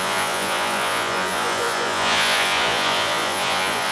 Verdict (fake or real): fake